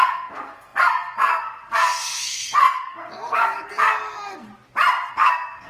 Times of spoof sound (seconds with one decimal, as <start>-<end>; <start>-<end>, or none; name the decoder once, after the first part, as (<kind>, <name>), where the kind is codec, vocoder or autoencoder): 0.0-4.5 (codec, SNAC); 5.1-5.7